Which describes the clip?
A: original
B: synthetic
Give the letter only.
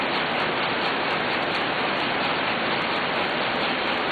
A